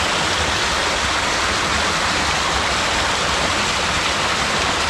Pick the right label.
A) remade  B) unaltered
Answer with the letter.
B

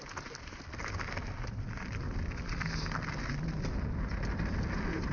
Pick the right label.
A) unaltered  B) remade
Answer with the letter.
A